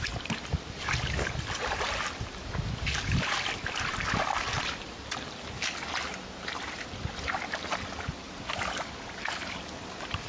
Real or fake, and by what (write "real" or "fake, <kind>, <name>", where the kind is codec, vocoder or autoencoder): real